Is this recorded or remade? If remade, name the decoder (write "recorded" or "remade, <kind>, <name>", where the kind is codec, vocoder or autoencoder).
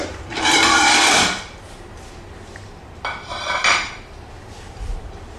remade, vocoder, BigVGAN v2